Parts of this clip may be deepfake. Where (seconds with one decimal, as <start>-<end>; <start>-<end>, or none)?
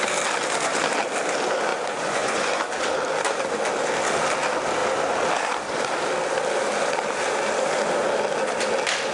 1.7-2.6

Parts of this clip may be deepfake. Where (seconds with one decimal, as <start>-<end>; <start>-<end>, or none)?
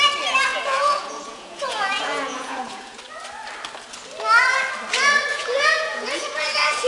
0.5-3.0; 5.3-6.9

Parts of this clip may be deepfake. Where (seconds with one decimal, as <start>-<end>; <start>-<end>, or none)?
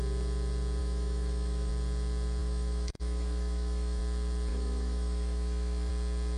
0.8-1.7; 2.4-4.0; 4.5-5.9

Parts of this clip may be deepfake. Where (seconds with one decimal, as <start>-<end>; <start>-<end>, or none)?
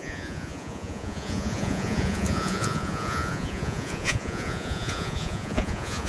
0.0-6.1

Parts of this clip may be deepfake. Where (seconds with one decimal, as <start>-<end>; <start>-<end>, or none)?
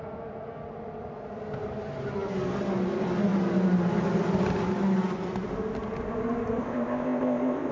6.6-7.7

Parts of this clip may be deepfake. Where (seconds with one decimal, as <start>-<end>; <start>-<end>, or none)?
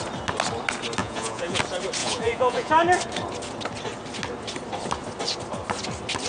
1.0-1.6; 2.0-2.7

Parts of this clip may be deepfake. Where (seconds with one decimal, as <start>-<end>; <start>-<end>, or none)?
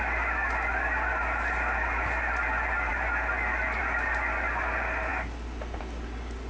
none